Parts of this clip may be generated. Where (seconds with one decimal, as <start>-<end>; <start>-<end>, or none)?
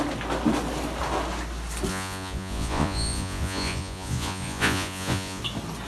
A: 1.9-5.4